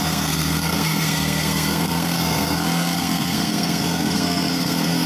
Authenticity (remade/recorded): remade